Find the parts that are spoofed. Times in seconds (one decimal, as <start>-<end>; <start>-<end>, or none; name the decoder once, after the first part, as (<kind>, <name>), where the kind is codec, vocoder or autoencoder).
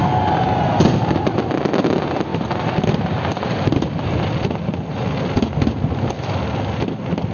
none